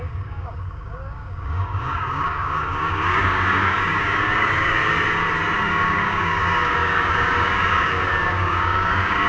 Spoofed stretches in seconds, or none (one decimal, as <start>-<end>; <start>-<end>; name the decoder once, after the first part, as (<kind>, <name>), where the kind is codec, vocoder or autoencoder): 0.0-4.8 (codec, DAC); 5.6-9.3